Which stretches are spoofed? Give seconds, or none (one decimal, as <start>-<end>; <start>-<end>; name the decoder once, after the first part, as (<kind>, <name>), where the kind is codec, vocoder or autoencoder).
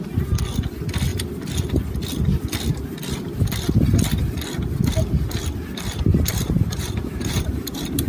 6.1-8.1 (vocoder, BigVGAN v2)